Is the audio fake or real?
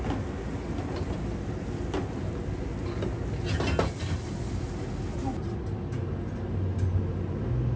real